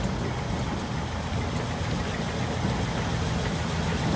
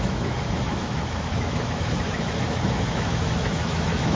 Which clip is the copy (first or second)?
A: second